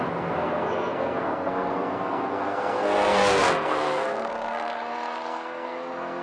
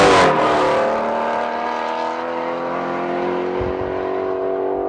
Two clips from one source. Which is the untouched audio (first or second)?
second